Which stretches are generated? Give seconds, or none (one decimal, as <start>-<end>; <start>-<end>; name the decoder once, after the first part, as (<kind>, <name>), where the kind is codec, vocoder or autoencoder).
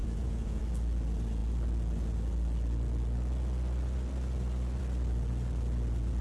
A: 0.0-0.6 (vocoder, Vocos)